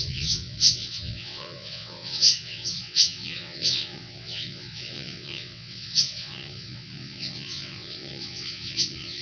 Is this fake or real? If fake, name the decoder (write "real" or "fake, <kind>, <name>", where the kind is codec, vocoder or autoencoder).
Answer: fake, vocoder, WaveNeXt